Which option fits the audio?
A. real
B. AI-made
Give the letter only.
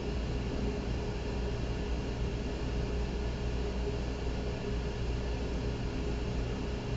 A